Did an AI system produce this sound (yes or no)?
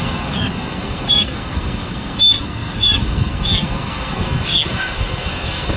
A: yes